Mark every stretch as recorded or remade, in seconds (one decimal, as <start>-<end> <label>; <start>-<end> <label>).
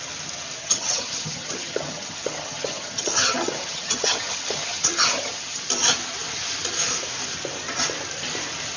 0.0-0.6 recorded; 0.6-5.6 remade; 5.6-8.8 recorded